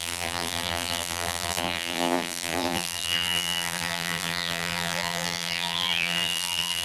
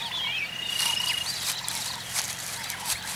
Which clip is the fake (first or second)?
first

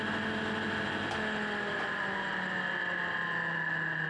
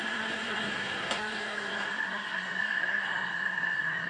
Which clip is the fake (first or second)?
second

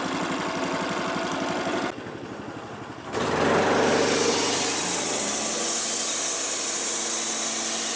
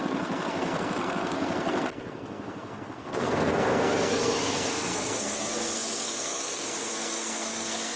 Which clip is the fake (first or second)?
second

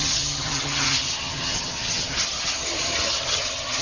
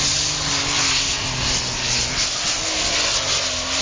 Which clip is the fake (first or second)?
first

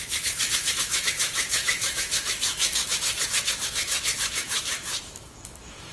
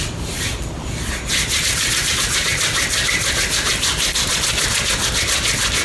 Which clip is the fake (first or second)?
first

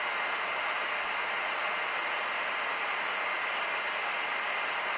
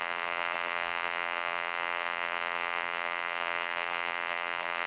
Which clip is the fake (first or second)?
second